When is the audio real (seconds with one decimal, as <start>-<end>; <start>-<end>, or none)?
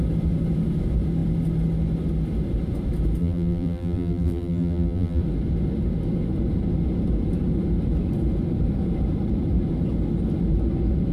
0.0-3.2; 5.2-11.1